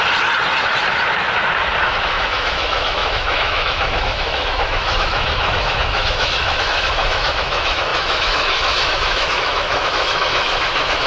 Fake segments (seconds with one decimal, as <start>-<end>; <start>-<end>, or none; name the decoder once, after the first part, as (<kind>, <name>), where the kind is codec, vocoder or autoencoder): 1.8-11.1 (autoencoder, DAC-VAE)